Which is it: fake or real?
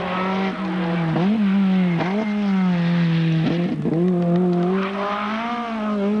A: real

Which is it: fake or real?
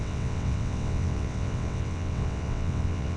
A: fake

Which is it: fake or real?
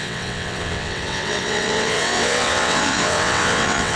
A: fake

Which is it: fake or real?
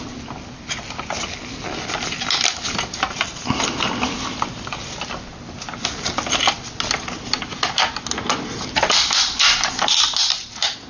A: real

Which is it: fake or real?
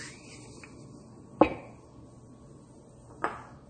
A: real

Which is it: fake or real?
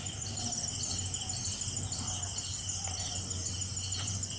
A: real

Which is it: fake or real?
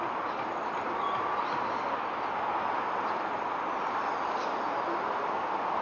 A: real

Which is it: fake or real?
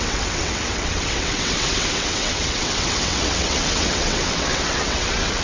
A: fake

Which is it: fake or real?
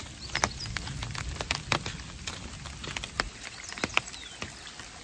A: real